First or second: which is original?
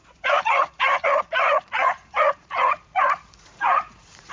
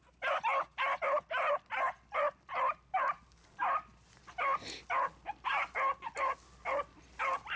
second